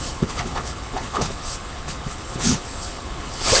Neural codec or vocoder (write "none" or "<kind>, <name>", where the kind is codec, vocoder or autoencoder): codec, HILCodec